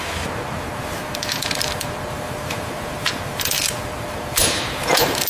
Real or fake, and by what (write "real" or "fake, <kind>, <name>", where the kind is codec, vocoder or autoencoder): fake, vocoder, BigVGAN v2